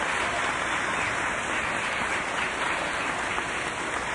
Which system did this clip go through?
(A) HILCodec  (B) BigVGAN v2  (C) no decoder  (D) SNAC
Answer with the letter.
C